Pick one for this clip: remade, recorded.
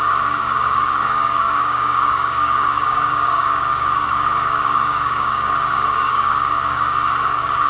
remade